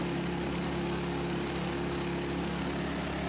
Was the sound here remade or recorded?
recorded